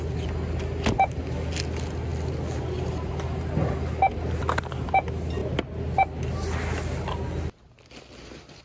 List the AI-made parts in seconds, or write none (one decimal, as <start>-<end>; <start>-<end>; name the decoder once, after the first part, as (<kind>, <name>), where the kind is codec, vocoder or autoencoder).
none